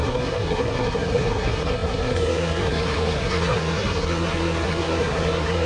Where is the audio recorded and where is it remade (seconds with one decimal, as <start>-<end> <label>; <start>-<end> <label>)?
0.0-5.7 remade

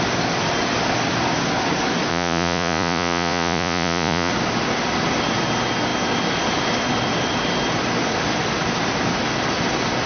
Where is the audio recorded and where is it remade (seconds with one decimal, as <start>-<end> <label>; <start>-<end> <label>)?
0.0-2.1 recorded; 2.1-4.3 remade; 4.3-10.1 recorded

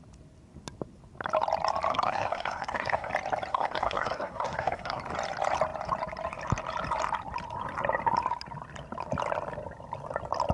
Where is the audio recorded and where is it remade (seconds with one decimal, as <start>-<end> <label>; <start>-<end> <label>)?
0.0-1.9 recorded; 1.9-3.1 remade; 3.1-3.5 recorded; 3.5-5.0 remade; 5.0-10.5 recorded